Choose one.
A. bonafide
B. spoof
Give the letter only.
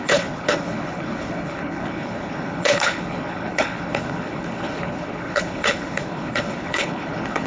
B